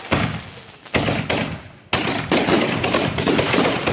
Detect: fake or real real